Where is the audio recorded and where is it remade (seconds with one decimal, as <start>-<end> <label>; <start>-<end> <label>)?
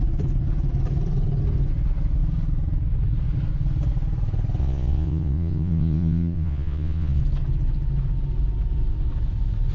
0.0-4.6 recorded; 4.6-7.2 remade; 7.2-9.7 recorded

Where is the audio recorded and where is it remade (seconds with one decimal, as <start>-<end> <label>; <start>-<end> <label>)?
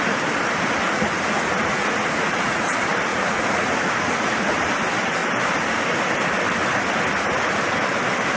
0.0-0.9 recorded; 0.9-2.7 remade; 2.7-3.1 recorded; 3.1-4.6 remade; 4.6-8.4 recorded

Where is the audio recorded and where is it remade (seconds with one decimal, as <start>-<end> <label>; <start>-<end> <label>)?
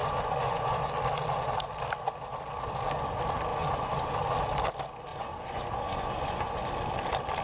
0.0-0.8 remade; 0.8-3.5 recorded; 3.5-4.2 remade; 4.2-5.1 recorded; 5.1-6.6 remade; 6.6-7.4 recorded